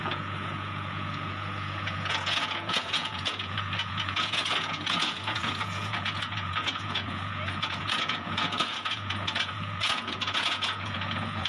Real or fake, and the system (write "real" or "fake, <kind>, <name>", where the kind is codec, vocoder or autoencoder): fake, vocoder, Vocos